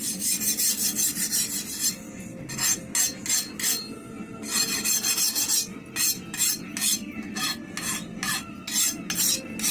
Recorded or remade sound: recorded